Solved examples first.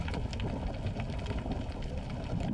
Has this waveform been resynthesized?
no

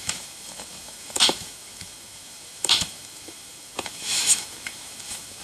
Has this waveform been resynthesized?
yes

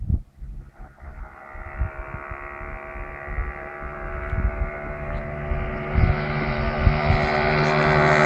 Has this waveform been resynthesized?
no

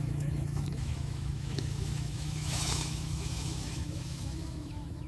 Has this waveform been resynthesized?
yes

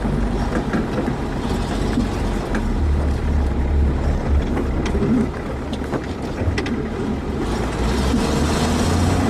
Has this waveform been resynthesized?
no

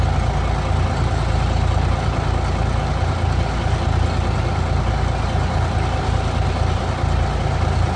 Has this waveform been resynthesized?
no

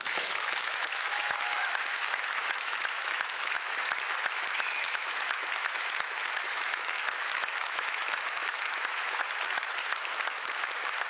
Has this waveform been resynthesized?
yes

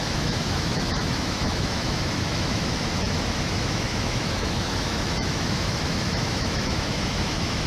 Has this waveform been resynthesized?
yes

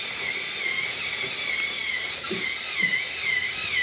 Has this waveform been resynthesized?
no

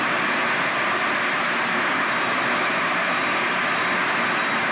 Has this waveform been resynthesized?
no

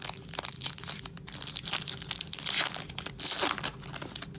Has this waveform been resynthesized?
no